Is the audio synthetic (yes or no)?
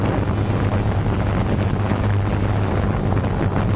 no